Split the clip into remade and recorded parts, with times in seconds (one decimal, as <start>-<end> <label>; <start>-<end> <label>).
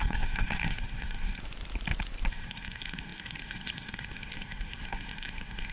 0.0-1.4 remade; 1.4-2.3 recorded; 2.3-5.7 remade